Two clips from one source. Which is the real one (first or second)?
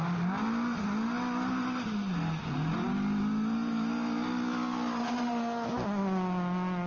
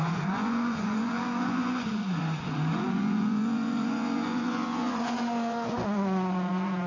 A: first